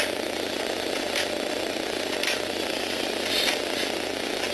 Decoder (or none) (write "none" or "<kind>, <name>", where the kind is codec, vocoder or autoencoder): none